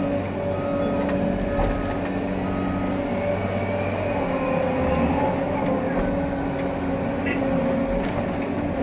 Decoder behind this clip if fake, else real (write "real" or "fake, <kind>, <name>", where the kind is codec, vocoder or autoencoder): real